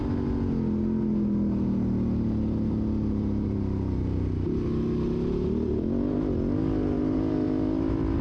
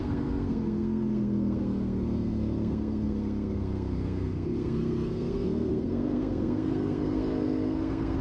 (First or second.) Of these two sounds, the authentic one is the first